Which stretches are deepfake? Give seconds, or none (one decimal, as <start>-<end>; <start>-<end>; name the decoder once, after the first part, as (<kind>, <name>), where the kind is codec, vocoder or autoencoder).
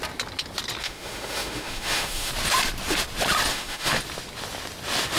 0.8-2.3 (autoencoder, DAC-VAE); 3.5-4.0